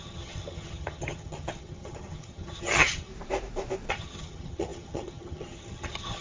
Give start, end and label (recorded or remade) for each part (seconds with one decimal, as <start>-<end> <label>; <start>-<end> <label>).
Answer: 0.0-3.1 remade; 3.1-3.9 recorded; 3.9-6.2 remade